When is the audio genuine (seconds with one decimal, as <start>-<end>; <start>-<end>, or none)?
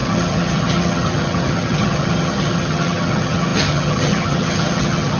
none